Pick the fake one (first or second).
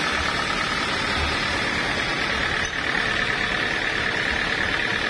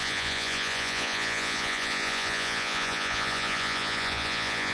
second